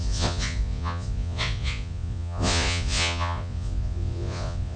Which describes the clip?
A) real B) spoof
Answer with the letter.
B